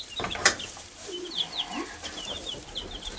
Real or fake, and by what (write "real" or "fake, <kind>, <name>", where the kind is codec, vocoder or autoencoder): fake, vocoder, BigVGAN v2